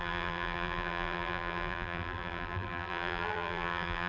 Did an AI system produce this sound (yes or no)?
yes